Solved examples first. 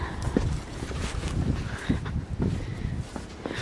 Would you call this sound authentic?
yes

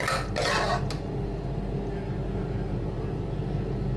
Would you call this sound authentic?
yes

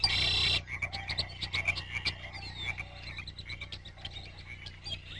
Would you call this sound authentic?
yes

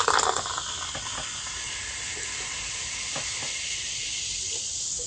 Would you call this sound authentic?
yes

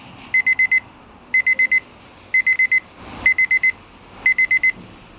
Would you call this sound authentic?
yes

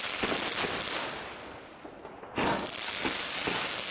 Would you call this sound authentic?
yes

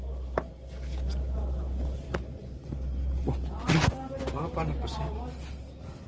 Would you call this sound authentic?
yes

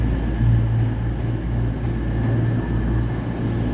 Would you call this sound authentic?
yes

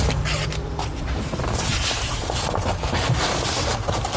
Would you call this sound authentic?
yes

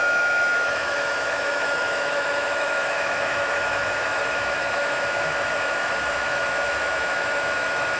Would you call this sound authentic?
no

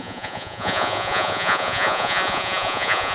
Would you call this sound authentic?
no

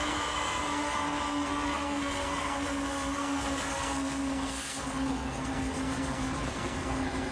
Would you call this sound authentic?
no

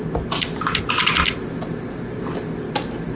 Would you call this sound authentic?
yes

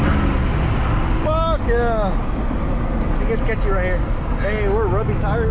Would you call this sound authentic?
yes